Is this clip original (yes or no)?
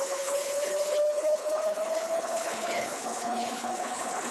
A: no